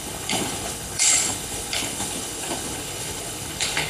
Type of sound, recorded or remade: remade